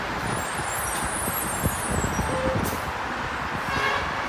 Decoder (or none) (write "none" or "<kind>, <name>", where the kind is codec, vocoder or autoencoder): none